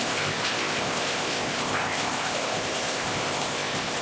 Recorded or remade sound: remade